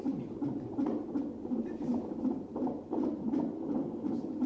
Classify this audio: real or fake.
real